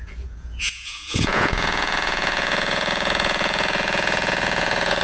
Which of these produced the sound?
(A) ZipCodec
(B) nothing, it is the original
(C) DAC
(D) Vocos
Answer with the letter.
D